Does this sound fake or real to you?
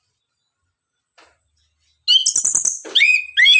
real